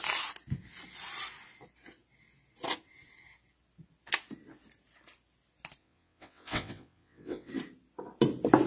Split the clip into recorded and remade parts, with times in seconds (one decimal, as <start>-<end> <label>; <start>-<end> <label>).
0.0-5.8 recorded; 5.8-7.5 remade; 7.5-8.7 recorded